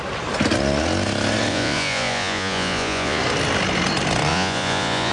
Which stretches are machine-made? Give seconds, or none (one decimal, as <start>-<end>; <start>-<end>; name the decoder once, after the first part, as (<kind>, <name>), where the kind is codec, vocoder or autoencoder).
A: 1.5-3.2 (vocoder, Vocos); 4.3-5.1